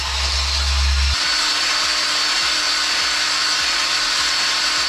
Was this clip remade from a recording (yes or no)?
no